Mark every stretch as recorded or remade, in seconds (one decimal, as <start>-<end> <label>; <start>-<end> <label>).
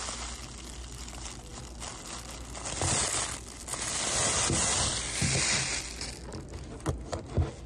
0.0-7.7 recorded